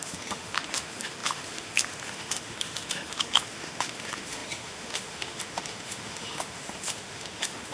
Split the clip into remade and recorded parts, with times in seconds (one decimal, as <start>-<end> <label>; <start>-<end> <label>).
0.0-7.7 remade